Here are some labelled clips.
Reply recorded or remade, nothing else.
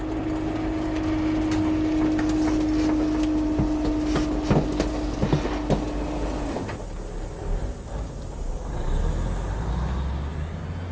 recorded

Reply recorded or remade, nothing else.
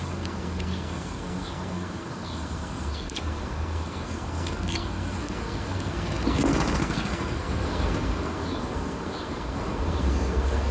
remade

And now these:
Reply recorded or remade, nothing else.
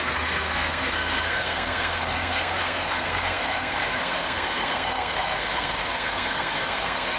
remade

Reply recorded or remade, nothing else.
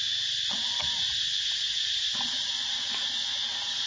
recorded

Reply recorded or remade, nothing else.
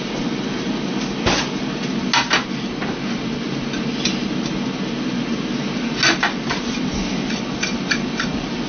recorded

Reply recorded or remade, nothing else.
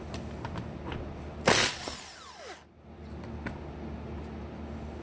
recorded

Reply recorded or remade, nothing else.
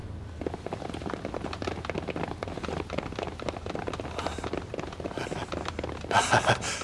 recorded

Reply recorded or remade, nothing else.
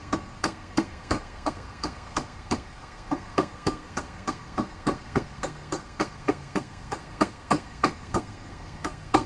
remade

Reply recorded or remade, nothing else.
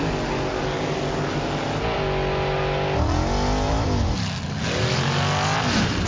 recorded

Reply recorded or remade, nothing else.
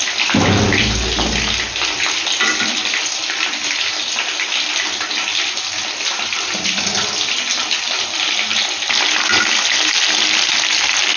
recorded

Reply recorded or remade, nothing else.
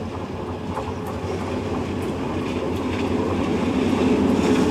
recorded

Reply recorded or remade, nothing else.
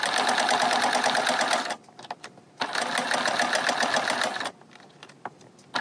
recorded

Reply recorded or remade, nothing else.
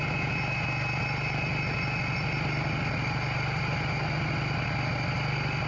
recorded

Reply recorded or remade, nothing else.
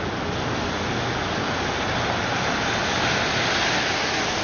recorded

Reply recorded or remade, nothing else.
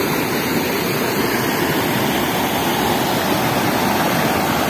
recorded